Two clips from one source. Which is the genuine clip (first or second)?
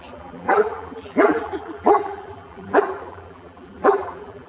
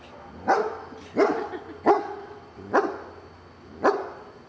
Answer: second